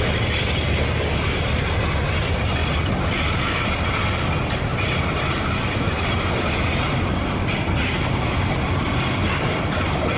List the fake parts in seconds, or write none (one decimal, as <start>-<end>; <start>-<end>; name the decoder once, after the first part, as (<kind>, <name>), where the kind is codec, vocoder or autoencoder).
4.7-5.6 (vocoder, BigVGAN v2)